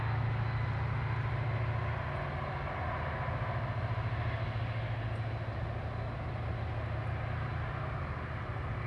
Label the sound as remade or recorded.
recorded